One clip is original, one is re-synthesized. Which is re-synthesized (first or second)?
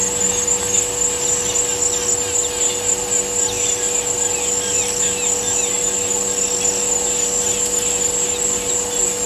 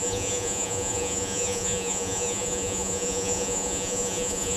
second